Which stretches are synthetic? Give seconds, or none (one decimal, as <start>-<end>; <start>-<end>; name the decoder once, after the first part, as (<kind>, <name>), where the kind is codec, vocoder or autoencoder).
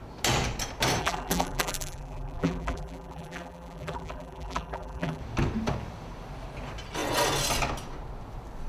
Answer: 1.0-5.2 (vocoder, BigVGAN v2)